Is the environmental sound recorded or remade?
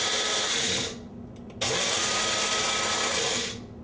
recorded